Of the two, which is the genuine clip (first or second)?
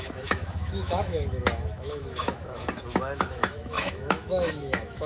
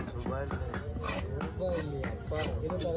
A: second